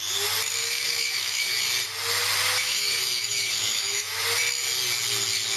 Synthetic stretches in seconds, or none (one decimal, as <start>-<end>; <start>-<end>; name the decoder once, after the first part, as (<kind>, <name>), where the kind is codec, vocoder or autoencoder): 0.6-1.5 (autoencoder, DAC-VAE); 2.6-4.1